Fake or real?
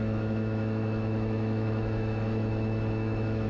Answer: fake